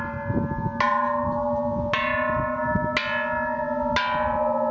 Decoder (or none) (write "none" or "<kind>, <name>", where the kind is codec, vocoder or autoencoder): none